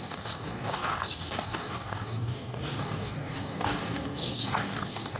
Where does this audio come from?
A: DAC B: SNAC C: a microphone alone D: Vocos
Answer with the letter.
A